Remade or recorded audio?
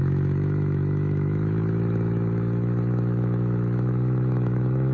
remade